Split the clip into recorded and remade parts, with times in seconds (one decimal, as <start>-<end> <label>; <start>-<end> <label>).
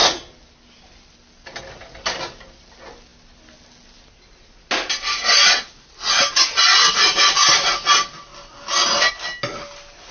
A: 0.0-10.1 recorded